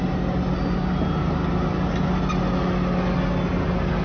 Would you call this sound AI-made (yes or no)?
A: no